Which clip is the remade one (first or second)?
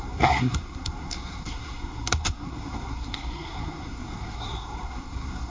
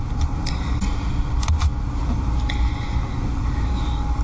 first